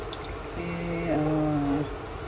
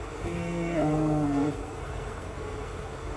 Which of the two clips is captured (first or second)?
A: first